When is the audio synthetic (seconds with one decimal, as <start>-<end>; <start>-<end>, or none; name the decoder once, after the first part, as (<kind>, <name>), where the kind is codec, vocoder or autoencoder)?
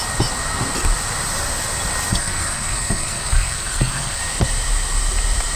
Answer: 2.1-4.2 (codec, SNAC)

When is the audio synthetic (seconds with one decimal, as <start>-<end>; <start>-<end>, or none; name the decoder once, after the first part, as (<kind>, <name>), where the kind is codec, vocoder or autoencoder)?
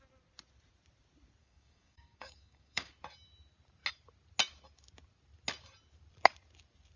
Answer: 1.4-2.9 (codec, DAC)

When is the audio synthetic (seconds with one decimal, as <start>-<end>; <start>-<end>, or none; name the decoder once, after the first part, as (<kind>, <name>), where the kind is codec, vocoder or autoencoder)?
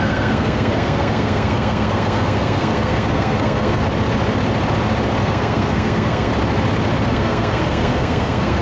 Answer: 0.0-3.8 (codec, SNAC); 5.2-6.3; 7.1-8.6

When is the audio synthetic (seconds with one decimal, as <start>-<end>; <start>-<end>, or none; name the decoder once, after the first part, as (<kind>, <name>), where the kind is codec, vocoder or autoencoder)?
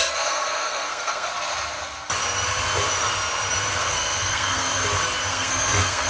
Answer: 0.0-1.3 (codec, SNAC); 3.8-4.8; 5.3-6.1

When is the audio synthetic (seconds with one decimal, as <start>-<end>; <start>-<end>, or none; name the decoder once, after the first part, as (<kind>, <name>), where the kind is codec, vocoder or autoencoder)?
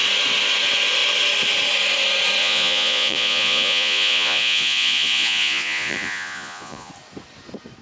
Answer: 2.4-6.9 (vocoder, Vocos)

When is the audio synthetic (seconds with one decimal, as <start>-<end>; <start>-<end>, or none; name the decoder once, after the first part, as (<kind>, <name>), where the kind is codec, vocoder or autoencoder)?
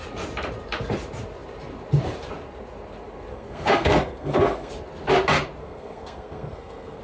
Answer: 3.3-4.7 (codec, SNAC); 5.6-7.0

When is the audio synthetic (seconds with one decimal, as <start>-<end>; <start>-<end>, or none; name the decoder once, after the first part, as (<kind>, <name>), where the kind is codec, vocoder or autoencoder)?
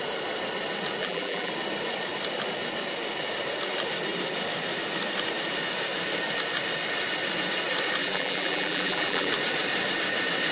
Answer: 1.0-1.5 (vocoder, BigVGAN v2); 8.0-9.3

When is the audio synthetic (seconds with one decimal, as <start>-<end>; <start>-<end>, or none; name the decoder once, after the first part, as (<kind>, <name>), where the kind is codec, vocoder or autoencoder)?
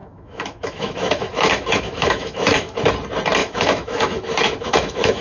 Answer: 0.0-2.8 (autoencoder, DAC-VAE); 3.4-5.2